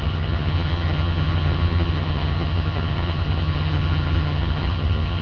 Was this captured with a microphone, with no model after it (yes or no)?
no